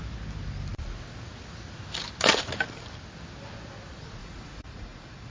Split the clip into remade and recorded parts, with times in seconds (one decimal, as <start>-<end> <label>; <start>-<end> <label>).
0.0-4.2 recorded; 4.2-5.3 remade